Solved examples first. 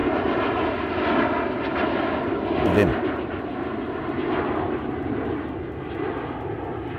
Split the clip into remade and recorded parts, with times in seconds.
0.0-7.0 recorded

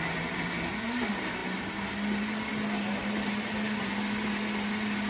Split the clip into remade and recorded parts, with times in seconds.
0.0-5.1 recorded

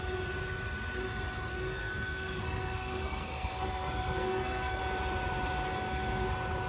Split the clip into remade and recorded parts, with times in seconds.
0.0-1.5 recorded; 1.5-4.8 remade; 4.8-6.7 recorded

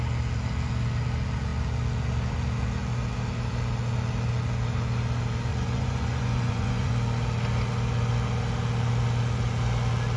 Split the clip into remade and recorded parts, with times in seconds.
0.0-5.5 recorded; 5.5-6.9 remade; 6.9-10.2 recorded

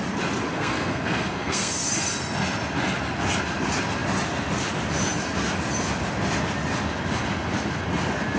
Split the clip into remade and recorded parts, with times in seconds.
0.0-0.5 recorded; 0.5-1.7 remade; 1.7-8.4 recorded

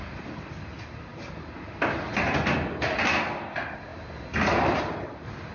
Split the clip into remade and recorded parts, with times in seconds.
0.0-5.5 recorded

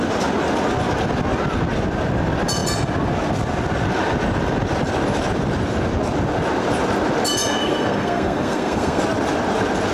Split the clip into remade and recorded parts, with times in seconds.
0.0-7.6 recorded; 7.6-9.0 remade; 9.0-9.9 recorded